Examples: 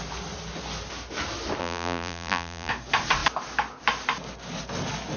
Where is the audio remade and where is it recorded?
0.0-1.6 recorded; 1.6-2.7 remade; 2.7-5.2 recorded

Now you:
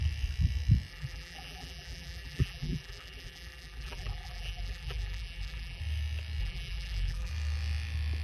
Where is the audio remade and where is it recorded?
0.0-0.9 recorded; 0.9-5.8 remade; 5.8-6.4 recorded; 6.4-7.3 remade; 7.3-8.2 recorded

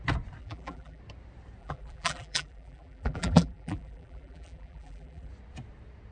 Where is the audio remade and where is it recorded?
0.0-0.4 recorded; 0.4-1.0 remade; 1.0-1.6 recorded; 1.6-5.3 remade; 5.3-6.1 recorded

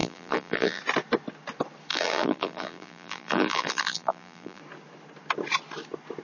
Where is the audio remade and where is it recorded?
0.0-0.8 remade; 0.8-1.9 recorded; 1.9-4.6 remade; 4.6-6.2 recorded

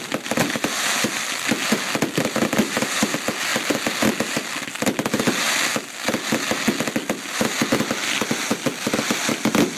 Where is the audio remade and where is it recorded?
0.0-8.5 recorded; 8.5-9.2 remade; 9.2-9.8 recorded

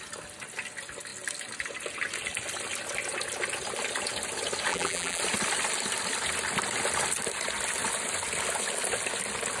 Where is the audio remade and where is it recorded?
0.0-4.7 recorded; 4.7-5.2 remade; 5.2-9.6 recorded